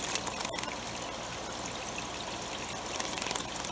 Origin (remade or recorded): recorded